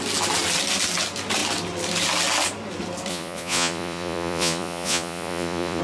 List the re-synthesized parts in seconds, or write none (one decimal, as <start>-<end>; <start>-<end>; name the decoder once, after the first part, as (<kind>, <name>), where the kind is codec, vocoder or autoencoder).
3.1-5.8 (vocoder, Vocos)